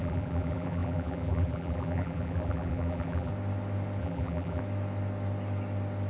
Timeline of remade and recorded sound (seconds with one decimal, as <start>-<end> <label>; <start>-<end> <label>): 0.0-3.3 remade; 3.3-4.0 recorded; 4.0-4.6 remade; 4.6-6.1 recorded